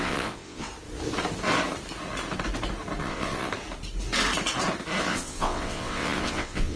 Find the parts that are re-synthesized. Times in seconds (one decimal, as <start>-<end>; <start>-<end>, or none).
0.0-0.7; 3.0-3.5; 5.0-6.8